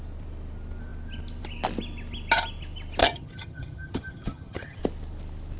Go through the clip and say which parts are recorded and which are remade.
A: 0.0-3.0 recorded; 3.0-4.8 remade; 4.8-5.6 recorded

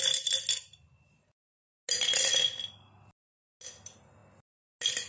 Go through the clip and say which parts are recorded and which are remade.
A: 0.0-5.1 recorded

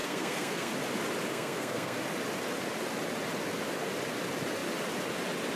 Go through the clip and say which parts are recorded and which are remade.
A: 0.0-0.7 remade; 0.7-1.3 recorded; 1.3-2.0 remade; 2.0-5.6 recorded

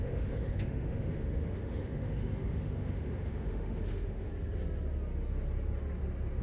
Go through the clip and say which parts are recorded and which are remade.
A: 0.0-4.3 remade; 4.3-6.4 recorded

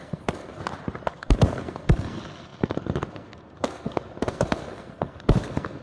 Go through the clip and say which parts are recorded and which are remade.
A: 0.0-0.6 remade; 0.6-1.1 recorded; 1.1-5.8 remade

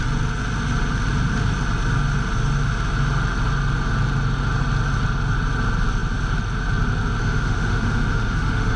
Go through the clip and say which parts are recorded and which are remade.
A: 0.0-7.2 recorded; 7.2-8.8 remade